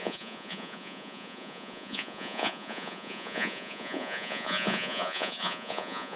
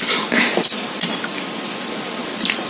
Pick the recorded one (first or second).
second